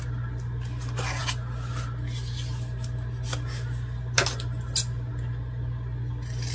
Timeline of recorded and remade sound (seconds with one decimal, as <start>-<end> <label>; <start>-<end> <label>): 0.0-6.5 recorded